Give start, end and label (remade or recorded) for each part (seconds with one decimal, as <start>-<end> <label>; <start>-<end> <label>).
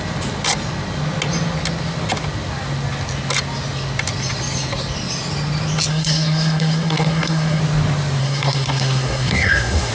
0.0-5.9 recorded; 5.9-7.6 remade; 7.6-8.2 recorded; 8.2-9.9 remade